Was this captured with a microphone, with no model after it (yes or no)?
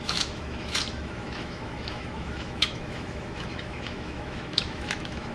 no